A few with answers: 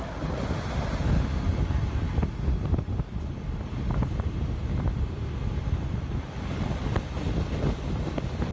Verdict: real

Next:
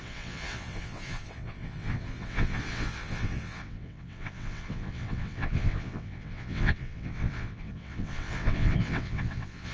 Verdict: fake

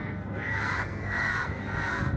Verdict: fake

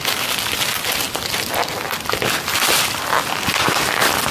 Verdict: real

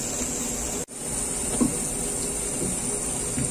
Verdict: real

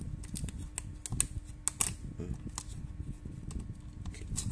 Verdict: real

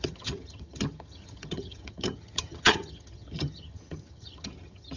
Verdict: fake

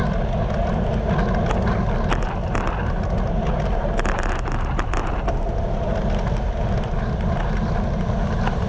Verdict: real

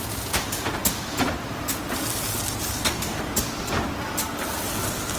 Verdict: real